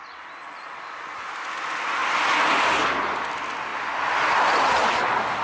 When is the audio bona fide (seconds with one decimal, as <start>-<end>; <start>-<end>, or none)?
0.0-5.4